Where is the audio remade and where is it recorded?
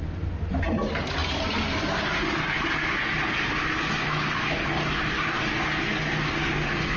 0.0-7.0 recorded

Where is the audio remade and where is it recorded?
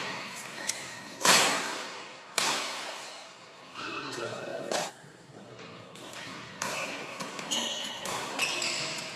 0.0-8.4 remade; 8.4-9.2 recorded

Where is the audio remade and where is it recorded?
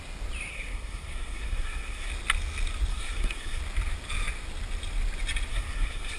0.0-0.5 recorded; 0.5-2.1 remade; 2.1-2.9 recorded; 2.9-3.6 remade; 3.6-5.5 recorded; 5.5-6.2 remade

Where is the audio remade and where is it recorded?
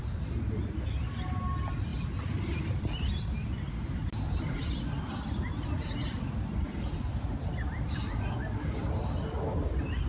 0.0-10.1 recorded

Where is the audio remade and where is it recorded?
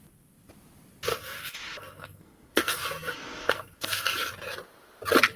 0.0-1.1 recorded; 1.1-4.3 remade; 4.3-5.4 recorded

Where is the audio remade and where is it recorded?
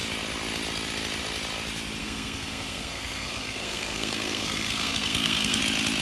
0.0-2.0 recorded; 2.0-5.6 remade; 5.6-6.0 recorded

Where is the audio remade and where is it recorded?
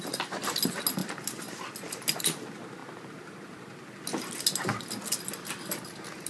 0.0-6.3 recorded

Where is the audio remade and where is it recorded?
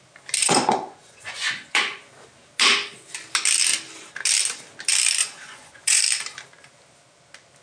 0.0-0.4 recorded; 0.4-2.1 remade; 2.1-5.2 recorded; 5.2-6.0 remade; 6.0-7.6 recorded